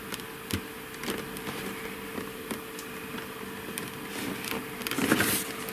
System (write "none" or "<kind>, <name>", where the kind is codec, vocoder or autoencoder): none